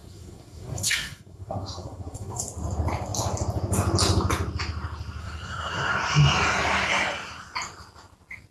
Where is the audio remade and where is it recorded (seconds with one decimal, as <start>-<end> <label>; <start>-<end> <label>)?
0.0-2.4 remade; 2.4-5.2 recorded; 5.2-5.9 remade; 5.9-8.5 recorded